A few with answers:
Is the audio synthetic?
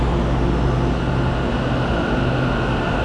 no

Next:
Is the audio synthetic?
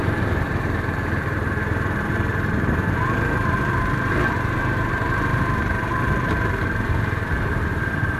yes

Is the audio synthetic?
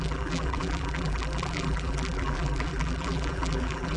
yes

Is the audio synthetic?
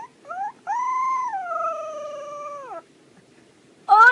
no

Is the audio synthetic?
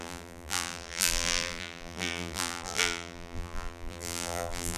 yes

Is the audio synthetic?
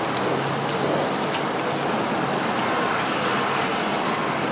no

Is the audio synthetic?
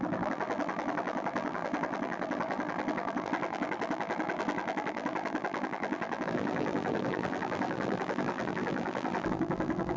yes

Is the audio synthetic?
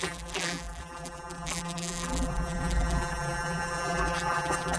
yes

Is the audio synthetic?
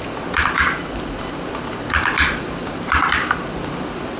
yes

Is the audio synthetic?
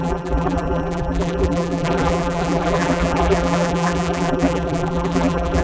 yes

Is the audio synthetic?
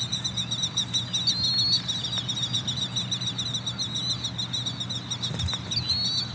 no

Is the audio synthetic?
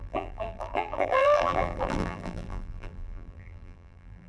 yes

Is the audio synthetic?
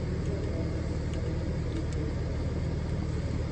no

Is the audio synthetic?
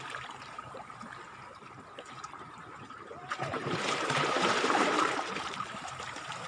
yes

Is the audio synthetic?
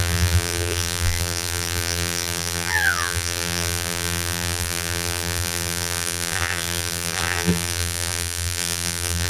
yes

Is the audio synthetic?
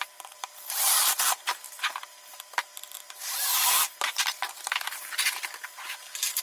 yes